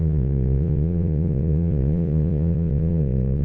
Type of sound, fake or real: fake